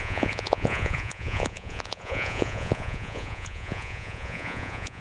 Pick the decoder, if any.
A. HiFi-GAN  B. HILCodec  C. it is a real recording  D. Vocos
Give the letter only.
D